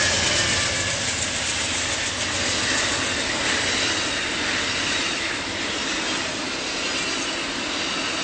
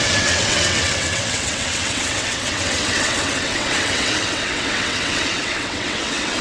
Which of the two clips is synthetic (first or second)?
second